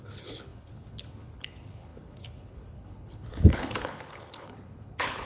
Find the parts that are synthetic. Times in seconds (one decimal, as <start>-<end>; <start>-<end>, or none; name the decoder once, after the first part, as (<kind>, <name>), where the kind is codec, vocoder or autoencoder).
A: 0.0-5.3 (codec, HILCodec)